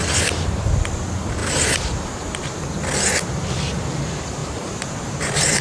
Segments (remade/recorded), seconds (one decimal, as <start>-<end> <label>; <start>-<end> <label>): 0.0-1.4 recorded; 1.4-2.4 remade; 2.4-4.4 recorded; 4.4-5.6 remade